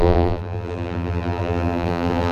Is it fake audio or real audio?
fake